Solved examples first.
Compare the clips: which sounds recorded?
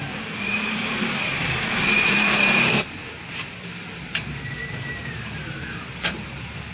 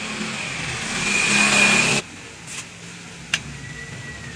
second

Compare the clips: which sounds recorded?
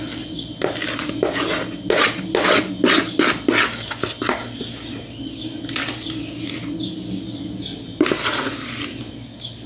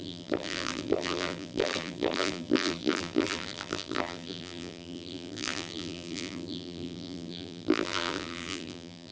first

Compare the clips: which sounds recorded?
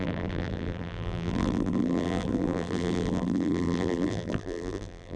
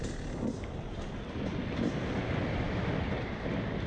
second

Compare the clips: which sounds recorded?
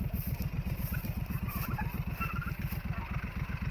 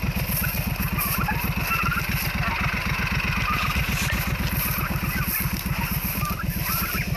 second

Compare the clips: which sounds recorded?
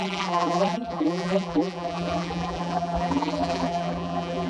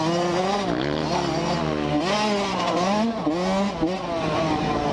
second